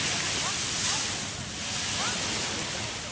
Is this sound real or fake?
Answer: real